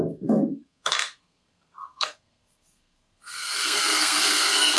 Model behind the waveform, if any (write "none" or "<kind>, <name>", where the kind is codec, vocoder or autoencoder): codec, SNAC